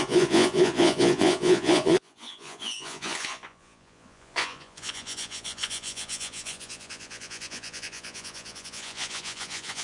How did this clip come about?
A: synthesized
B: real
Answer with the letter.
A